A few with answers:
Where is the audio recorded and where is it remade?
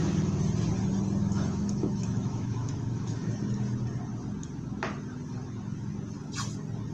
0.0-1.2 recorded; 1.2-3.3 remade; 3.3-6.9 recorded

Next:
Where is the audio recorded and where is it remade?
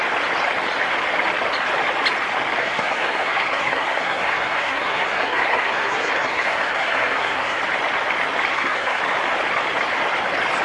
0.0-2.6 recorded; 2.6-7.6 remade; 7.6-8.5 recorded; 8.5-9.0 remade; 9.0-10.6 recorded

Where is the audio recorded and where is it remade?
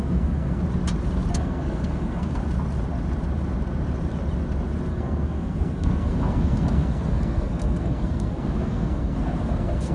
0.0-0.6 remade; 0.6-1.3 recorded; 1.3-2.4 remade; 2.4-4.9 recorded; 4.9-9.9 remade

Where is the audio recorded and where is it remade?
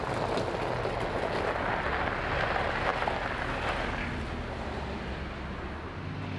0.0-6.4 recorded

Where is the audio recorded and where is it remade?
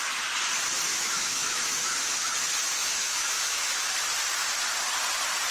0.0-0.9 recorded; 0.9-2.2 remade; 2.2-2.8 recorded; 2.8-3.9 remade; 3.9-5.5 recorded